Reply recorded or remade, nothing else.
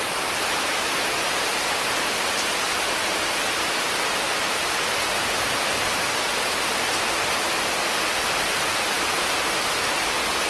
recorded